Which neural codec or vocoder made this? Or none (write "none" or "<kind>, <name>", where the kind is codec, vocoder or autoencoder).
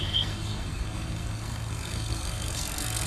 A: codec, SNAC